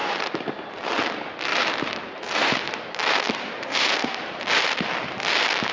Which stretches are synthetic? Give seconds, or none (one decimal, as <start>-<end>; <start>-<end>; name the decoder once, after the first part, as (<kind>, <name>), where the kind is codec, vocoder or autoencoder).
0.0-0.7 (vocoder, BigVGAN v2); 1.5-4.9